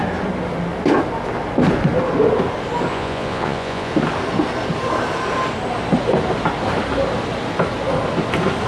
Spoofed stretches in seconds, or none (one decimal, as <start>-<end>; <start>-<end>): 2.9-3.9